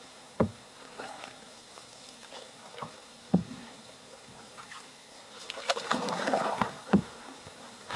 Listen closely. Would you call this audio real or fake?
fake